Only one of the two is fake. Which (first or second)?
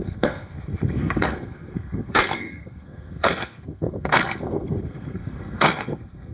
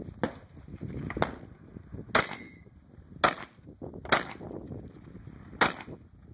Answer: first